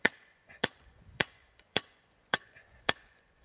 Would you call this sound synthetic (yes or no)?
yes